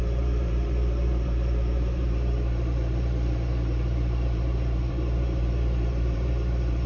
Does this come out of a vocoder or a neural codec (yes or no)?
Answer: yes